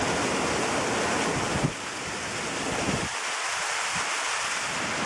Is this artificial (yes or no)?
no